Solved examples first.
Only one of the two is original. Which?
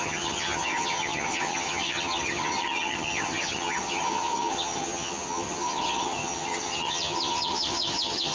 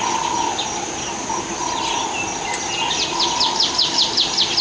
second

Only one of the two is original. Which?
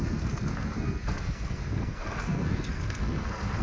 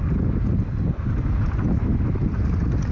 second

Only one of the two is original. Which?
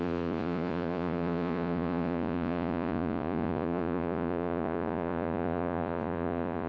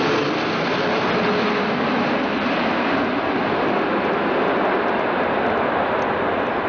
second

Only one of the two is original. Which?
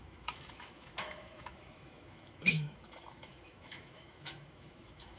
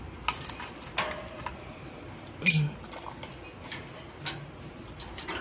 second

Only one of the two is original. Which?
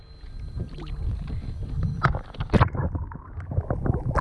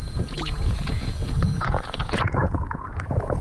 first